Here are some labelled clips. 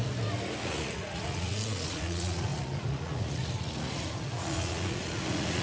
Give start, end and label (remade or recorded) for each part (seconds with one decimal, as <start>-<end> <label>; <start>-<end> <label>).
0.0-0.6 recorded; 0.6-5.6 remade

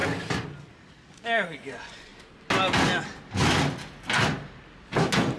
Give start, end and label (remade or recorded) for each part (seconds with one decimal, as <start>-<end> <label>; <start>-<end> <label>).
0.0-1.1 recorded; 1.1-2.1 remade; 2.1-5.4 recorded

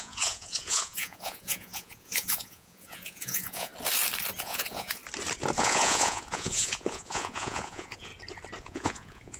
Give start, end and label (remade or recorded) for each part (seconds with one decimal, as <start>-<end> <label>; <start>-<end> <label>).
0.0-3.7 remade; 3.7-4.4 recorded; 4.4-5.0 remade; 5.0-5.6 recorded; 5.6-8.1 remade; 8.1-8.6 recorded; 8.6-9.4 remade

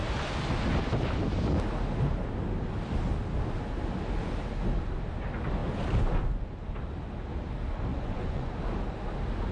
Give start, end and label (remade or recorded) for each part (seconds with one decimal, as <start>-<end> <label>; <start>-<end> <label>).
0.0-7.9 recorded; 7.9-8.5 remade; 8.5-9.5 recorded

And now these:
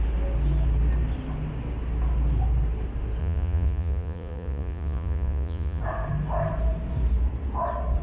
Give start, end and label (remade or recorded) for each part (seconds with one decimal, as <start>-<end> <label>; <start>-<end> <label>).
0.0-3.2 recorded; 3.2-5.8 remade; 5.8-8.0 recorded

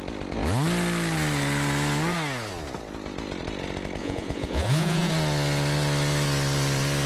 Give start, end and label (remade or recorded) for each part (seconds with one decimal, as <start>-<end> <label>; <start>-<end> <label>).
0.0-4.0 recorded; 4.0-5.1 remade; 5.1-7.1 recorded

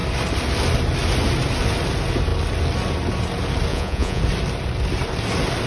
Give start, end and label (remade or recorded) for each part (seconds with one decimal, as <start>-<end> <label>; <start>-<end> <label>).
0.0-3.7 recorded; 3.7-4.2 remade; 4.2-5.7 recorded